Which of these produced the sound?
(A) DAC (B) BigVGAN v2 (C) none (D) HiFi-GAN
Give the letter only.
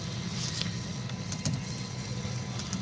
C